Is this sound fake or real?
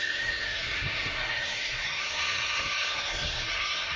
fake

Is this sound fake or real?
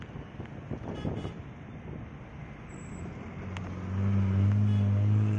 real